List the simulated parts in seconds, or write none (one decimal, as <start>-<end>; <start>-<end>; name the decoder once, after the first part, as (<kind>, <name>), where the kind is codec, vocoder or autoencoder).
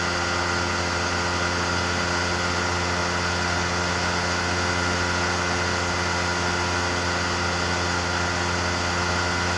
none